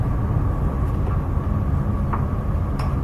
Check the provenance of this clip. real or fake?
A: real